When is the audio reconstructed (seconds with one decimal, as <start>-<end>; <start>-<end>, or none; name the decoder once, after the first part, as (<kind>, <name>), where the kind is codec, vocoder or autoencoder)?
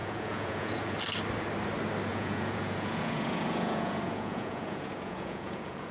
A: 0.0-1.0 (vocoder, Vocos); 2.1-5.9